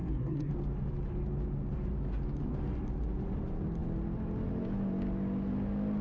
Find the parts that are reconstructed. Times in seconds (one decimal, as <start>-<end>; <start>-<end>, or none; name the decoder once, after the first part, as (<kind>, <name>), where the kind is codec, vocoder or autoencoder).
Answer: 0.0-0.5 (codec, SNAC)